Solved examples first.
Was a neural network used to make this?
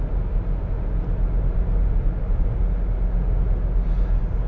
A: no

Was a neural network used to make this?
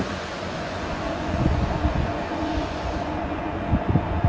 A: yes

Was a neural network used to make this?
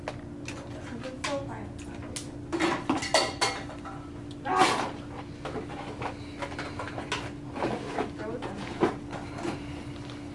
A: no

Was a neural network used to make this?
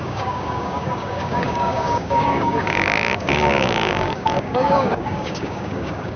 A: yes